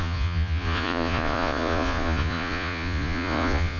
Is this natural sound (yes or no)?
no